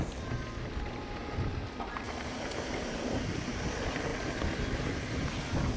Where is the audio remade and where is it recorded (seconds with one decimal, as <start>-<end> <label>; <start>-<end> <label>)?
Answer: 0.0-1.2 remade; 1.2-3.5 recorded; 3.5-5.8 remade